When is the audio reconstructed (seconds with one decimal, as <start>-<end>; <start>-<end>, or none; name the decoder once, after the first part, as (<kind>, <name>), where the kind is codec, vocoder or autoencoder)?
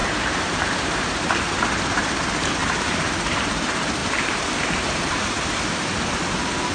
0.0-1.5 (vocoder, BigVGAN v2); 2.6-3.4; 4.0-5.1